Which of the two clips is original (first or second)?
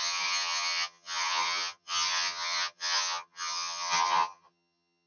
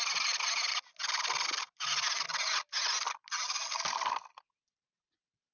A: second